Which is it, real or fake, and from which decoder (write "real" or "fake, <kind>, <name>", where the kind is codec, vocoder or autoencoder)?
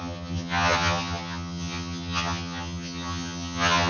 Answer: fake, vocoder, HiFi-GAN